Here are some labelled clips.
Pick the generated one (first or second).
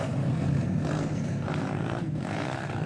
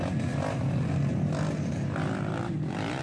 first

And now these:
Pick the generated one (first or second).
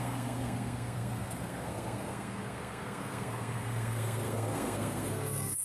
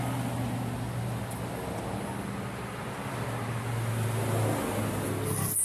first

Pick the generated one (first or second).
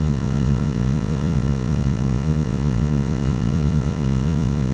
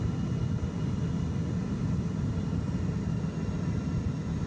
first